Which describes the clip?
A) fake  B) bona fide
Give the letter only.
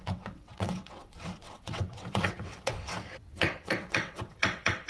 A